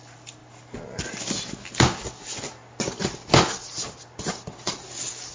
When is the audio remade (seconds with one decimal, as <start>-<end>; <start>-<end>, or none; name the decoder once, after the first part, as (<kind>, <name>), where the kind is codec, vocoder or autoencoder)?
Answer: none